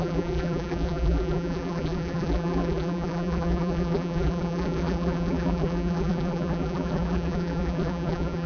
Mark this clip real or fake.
fake